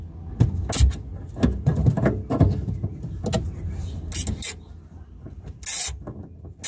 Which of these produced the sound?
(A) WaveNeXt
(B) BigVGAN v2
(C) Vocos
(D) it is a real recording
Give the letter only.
D